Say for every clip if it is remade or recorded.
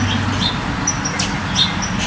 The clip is recorded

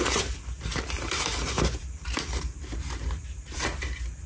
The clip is remade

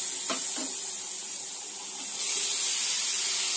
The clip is recorded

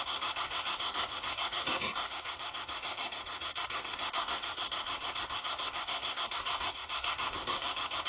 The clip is remade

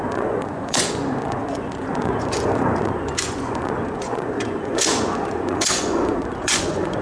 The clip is remade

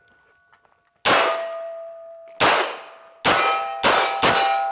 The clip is recorded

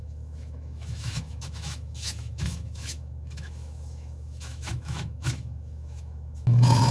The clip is remade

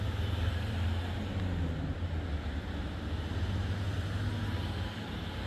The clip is recorded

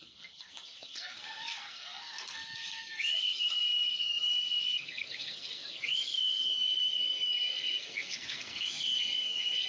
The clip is remade